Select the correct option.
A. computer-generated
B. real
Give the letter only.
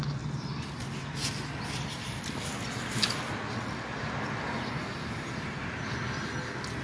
B